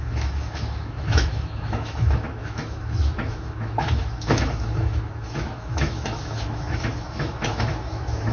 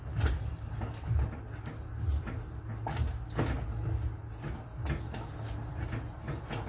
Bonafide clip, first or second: second